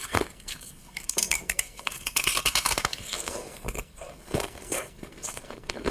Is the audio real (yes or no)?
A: no